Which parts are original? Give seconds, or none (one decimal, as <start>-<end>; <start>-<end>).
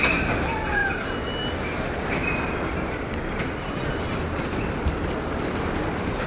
0.0-6.3